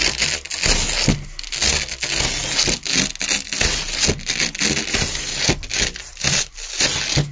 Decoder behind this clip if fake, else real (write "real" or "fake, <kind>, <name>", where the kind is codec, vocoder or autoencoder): real